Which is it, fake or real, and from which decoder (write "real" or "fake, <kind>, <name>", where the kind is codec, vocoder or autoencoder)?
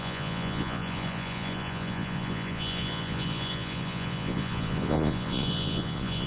fake, vocoder, Vocos